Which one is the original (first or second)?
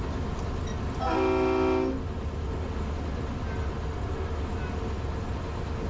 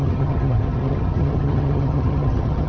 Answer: first